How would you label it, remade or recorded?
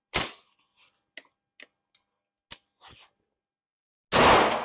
recorded